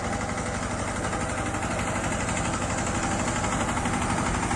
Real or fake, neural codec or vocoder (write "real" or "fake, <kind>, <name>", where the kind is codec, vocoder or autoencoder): real